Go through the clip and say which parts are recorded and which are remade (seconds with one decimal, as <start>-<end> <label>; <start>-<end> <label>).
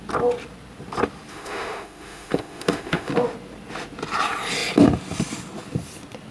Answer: 0.0-1.3 recorded; 1.3-3.1 remade; 3.1-6.3 recorded